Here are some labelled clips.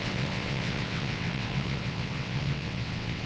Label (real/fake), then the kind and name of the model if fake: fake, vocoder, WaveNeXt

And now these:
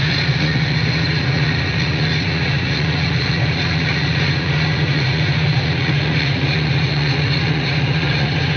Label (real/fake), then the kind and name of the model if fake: fake, vocoder, Vocos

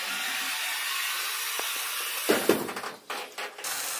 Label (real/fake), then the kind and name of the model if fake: real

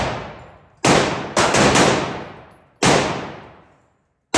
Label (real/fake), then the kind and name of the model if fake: real